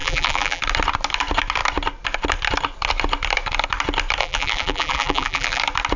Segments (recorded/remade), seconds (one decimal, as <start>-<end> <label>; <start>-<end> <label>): 0.0-0.6 remade; 0.6-4.2 recorded; 4.2-5.6 remade; 5.6-6.0 recorded